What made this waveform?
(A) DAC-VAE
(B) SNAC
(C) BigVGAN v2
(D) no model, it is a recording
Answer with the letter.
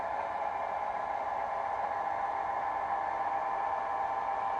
D